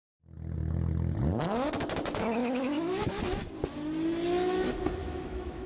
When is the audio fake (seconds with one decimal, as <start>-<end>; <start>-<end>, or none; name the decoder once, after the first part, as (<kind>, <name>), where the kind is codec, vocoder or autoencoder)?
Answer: 2.4-3.2 (autoencoder, DAC-VAE); 5.0-5.7